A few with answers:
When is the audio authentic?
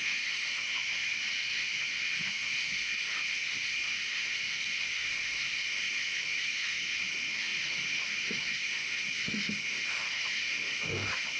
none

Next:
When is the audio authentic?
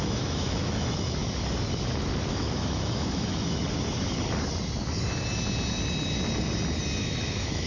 1.2-2.3; 3.6-7.0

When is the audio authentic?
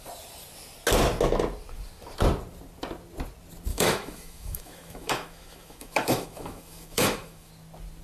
0.0-3.7; 7.5-8.0